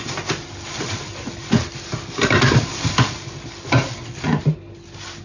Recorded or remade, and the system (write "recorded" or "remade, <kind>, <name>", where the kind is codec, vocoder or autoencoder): recorded